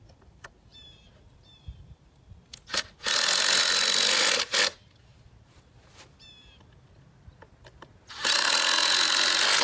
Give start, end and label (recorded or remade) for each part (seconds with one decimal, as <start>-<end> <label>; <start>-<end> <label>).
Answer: 0.0-0.7 recorded; 0.7-3.6 remade; 3.6-5.1 recorded; 5.1-8.3 remade; 8.3-9.6 recorded